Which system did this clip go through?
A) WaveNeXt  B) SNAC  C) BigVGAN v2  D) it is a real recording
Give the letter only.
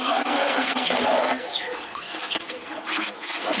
B